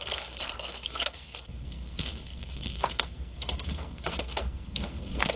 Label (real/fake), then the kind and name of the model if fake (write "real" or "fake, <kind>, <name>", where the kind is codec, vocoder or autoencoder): fake, codec, SNAC